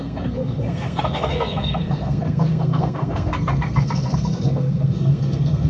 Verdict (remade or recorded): remade